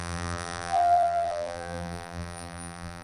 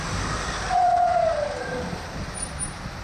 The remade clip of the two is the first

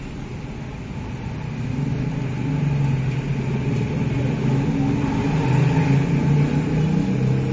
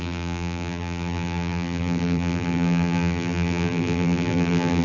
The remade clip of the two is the second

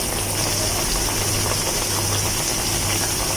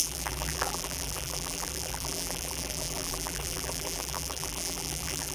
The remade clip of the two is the second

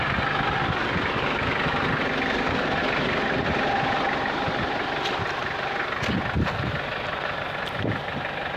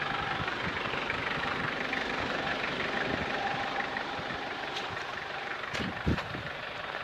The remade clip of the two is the second